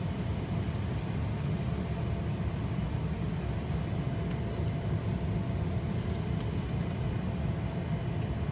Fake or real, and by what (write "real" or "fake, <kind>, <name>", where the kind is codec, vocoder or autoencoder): real